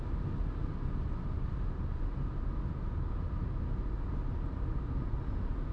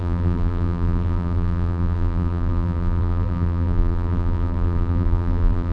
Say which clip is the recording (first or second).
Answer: first